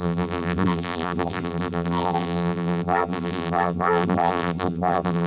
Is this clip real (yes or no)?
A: no